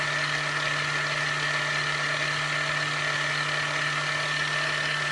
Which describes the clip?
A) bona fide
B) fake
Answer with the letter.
A